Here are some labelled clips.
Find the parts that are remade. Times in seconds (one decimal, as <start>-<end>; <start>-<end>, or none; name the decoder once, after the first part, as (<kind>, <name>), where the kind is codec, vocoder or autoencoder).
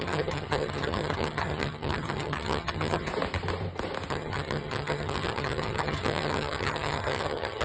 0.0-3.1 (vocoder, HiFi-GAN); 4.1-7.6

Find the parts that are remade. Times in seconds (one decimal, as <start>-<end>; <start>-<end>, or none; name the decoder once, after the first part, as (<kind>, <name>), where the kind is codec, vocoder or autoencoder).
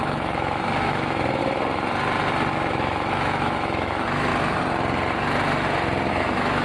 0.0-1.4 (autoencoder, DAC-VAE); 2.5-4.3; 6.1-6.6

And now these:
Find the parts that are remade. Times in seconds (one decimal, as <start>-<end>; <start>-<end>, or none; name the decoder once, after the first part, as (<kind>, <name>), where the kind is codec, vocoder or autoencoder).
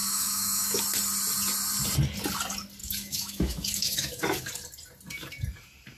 0.0-0.8 (autoencoder, DAC-VAE); 2.8-4.5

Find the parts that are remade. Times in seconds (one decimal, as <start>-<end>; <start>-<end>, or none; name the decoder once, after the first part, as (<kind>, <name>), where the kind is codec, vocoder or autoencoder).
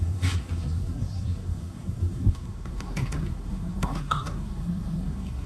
0.0-5.5 (codec, SNAC)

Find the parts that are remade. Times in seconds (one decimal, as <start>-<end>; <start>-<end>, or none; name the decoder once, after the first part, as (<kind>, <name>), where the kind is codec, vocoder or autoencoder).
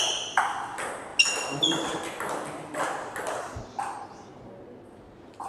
none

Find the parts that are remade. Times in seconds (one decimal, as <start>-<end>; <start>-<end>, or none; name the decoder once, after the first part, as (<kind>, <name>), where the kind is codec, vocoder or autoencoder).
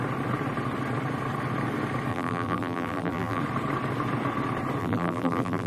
2.1-3.4 (vocoder, BigVGAN v2); 4.8-5.7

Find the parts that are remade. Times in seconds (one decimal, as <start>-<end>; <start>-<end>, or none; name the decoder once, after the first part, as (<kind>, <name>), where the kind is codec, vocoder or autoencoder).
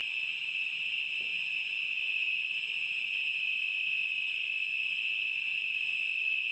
none